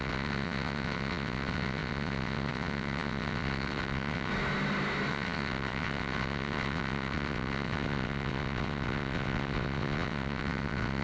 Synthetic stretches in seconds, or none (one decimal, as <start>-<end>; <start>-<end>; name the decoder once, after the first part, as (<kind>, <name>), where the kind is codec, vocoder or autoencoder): 0.0-4.3 (vocoder, WaveNeXt); 5.1-11.0

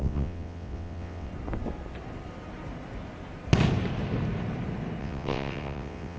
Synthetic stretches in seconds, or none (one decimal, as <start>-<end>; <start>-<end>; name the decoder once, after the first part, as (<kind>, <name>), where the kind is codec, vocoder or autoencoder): 0.0-1.3 (vocoder, WaveNeXt); 5.0-6.2

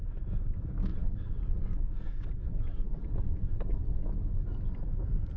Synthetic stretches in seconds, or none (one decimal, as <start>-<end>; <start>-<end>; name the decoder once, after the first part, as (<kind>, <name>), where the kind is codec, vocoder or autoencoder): 0.9-4.1 (vocoder, WaveNeXt)

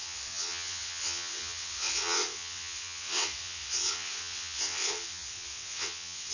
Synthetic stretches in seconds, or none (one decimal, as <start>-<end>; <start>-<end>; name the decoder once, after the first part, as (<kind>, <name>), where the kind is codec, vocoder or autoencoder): 0.0-6.3 (vocoder, WaveNeXt)